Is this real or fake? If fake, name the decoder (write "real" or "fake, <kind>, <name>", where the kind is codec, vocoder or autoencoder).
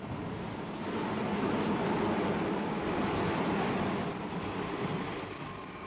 real